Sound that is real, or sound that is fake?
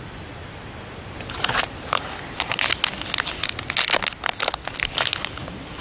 real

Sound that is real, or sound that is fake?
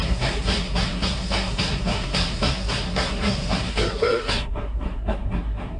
fake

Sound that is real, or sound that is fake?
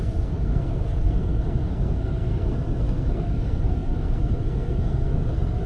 fake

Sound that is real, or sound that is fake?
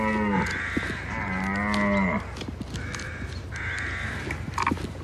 real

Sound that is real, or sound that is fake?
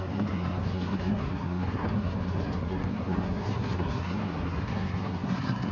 fake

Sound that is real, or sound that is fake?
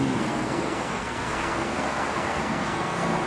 fake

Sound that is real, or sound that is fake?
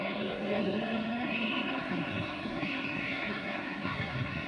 fake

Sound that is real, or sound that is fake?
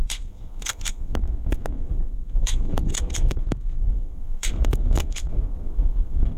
fake